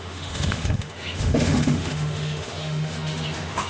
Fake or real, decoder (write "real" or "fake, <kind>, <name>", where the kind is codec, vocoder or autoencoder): fake, autoencoder, DAC-VAE